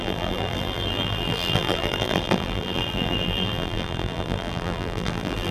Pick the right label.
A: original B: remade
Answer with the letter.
B